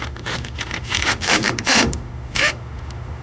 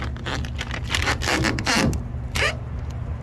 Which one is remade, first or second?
first